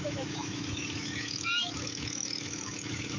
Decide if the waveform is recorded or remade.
remade